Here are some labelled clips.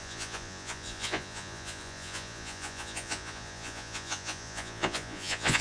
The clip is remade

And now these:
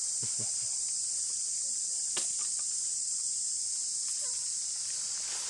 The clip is recorded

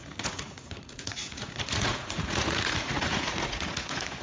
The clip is remade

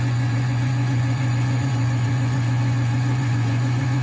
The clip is remade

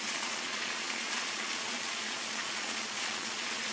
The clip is remade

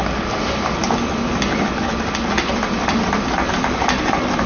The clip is recorded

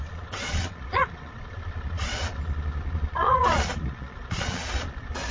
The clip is remade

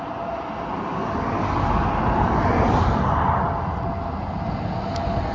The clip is recorded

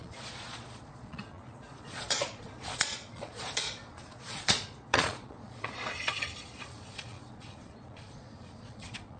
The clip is remade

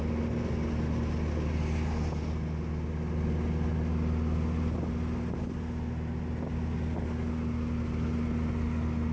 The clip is recorded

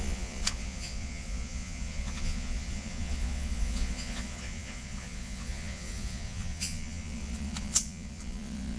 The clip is remade